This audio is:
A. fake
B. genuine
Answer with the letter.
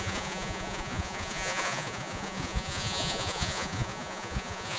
A